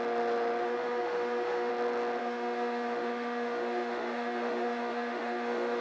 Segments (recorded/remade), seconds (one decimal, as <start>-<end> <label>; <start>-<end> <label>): 0.0-0.6 recorded; 0.6-1.7 remade; 1.7-2.2 recorded; 2.2-5.8 remade

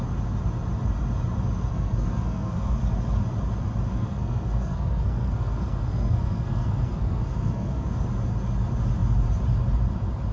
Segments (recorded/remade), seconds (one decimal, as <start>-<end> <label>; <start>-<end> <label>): 0.0-1.7 recorded; 1.7-2.8 remade; 2.8-3.9 recorded; 3.9-8.1 remade; 8.1-10.3 recorded

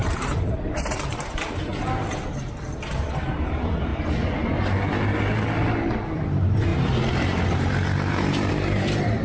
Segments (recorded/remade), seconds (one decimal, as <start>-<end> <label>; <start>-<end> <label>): 0.0-1.7 remade; 1.7-2.9 recorded; 2.9-3.9 remade; 3.9-6.0 recorded; 6.0-9.2 remade

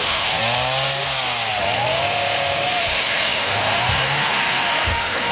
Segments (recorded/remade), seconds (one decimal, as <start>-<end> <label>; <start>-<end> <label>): 0.0-0.4 remade; 0.4-1.6 recorded; 1.6-5.3 remade

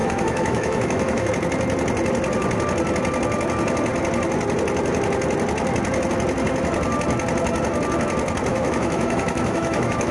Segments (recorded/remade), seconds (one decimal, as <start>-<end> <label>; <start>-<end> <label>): 0.0-1.3 remade; 1.3-8.5 recorded; 8.5-10.1 remade

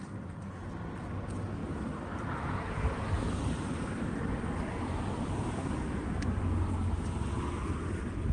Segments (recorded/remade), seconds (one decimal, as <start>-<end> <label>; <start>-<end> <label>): 0.0-8.3 recorded

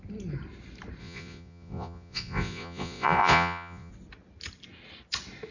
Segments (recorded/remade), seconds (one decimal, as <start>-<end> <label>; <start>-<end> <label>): 0.0-1.0 recorded; 1.0-3.9 remade; 3.9-5.5 recorded